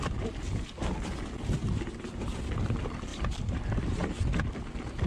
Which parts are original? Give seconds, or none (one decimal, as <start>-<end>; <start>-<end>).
0.0-1.6; 2.4-3.1; 3.6-5.1